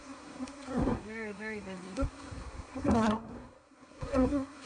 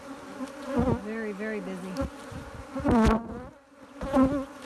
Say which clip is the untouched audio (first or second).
second